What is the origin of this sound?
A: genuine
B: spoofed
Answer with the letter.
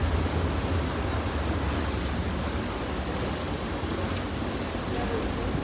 A